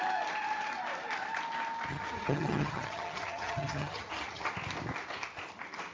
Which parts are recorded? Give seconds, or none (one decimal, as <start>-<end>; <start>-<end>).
0.0-1.9; 4.5-5.9